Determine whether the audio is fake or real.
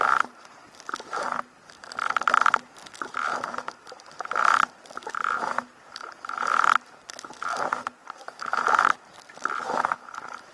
real